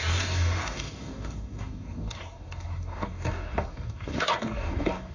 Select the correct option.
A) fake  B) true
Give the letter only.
A